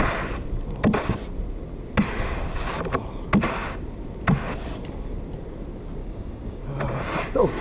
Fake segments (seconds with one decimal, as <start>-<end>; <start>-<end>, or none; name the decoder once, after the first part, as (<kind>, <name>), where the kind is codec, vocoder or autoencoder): 6.0-6.6 (codec, DAC)